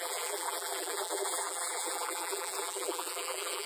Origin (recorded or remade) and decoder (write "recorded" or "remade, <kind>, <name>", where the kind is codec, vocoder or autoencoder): remade, vocoder, BigVGAN v2